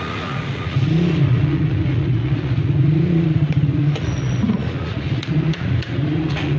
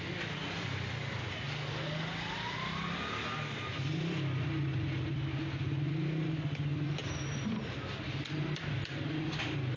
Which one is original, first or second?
second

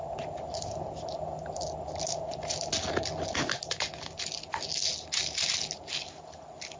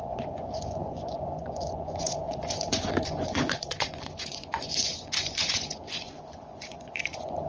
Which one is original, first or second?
first